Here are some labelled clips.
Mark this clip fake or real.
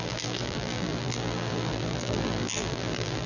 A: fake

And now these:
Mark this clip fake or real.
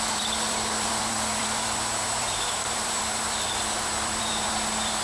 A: fake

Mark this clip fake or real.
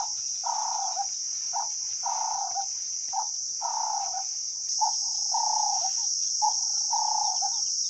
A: real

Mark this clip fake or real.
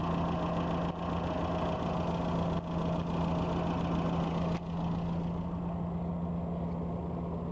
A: real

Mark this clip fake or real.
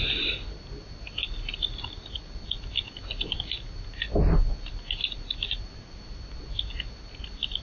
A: real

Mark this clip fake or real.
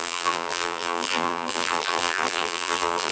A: fake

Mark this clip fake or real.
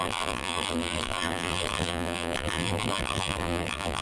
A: fake